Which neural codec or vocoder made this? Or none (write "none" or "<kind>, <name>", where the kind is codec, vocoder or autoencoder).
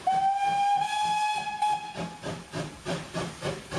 none